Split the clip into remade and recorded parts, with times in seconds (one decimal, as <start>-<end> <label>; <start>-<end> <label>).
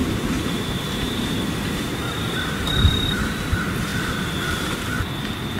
0.0-3.9 remade; 3.9-5.6 recorded